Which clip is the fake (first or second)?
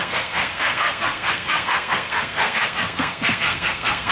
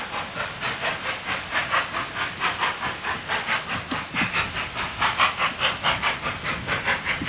first